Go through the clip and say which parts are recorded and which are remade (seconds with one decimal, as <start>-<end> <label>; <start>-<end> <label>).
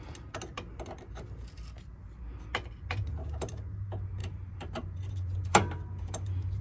0.0-4.2 recorded; 4.2-6.6 remade